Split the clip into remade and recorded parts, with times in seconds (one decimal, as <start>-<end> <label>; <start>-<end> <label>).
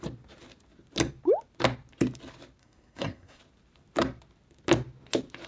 0.0-2.6 recorded; 2.6-3.4 remade; 3.4-5.5 recorded